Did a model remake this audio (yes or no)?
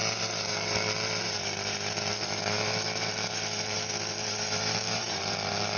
yes